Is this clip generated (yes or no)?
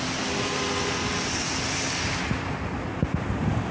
no